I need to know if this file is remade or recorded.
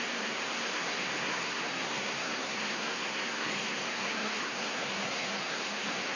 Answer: remade